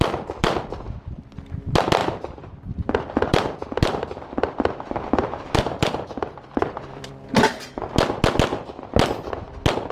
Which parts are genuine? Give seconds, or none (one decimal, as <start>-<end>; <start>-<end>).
0.0-0.4; 1.3-2.0; 7.1-9.9